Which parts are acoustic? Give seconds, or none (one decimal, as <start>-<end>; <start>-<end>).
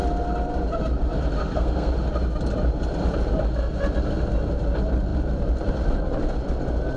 0.0-1.4; 1.9-7.0